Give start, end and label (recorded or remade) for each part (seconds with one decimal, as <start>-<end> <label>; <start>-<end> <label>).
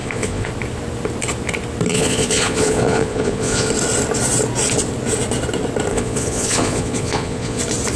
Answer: 0.0-0.5 remade; 0.5-1.9 recorded; 1.9-3.7 remade; 3.7-5.9 recorded; 5.9-7.6 remade; 7.6-8.0 recorded